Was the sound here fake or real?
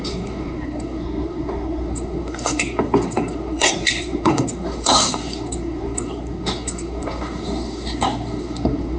fake